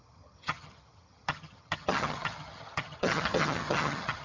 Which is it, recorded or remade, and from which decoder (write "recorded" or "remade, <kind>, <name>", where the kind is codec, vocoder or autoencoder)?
remade, vocoder, HiFi-GAN